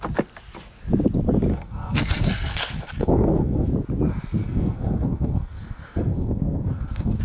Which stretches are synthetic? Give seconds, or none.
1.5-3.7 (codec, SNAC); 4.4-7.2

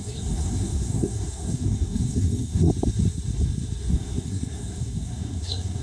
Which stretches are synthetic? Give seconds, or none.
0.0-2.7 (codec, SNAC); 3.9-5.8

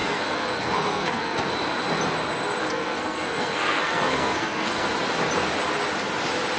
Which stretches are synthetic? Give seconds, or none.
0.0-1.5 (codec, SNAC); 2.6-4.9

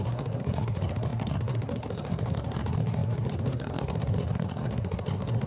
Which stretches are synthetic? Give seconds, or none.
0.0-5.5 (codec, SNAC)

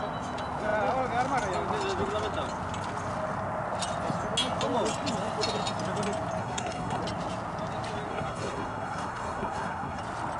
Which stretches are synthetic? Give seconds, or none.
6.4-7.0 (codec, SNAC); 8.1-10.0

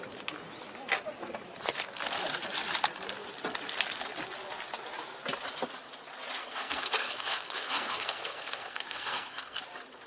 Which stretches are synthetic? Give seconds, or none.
6.4-9.6 (codec, SNAC)

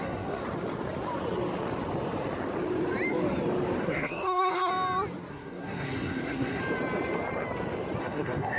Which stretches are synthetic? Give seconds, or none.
0.0-0.4 (codec, SNAC); 3.8-4.7; 5.3-6.6; 8.0-8.6

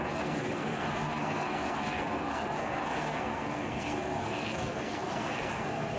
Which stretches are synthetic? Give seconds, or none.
0.0-6.0 (codec, SNAC)